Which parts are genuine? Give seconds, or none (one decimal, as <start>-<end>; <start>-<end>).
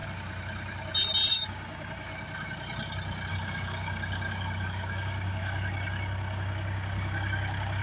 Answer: 0.0-1.3; 2.1-3.3